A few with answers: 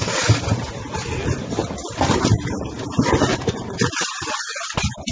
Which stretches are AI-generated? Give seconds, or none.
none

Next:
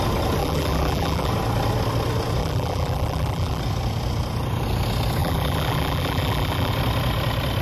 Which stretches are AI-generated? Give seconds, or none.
0.4-1.3; 2.4-3.6; 5.2-6.7

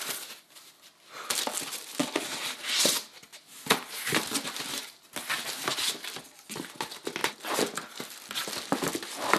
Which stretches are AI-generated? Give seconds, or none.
7.2-8.0

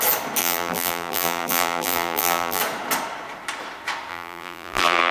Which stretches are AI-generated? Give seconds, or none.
0.4-2.6; 4.1-5.1

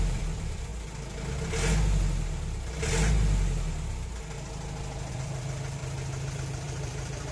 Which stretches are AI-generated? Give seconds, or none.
0.0-0.7; 5.1-5.8; 6.3-7.3